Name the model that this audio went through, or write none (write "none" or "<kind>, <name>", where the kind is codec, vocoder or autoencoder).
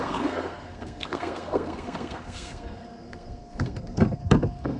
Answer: codec, SNAC